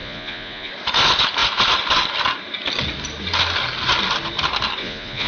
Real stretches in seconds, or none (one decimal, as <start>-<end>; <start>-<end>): 0.7-4.8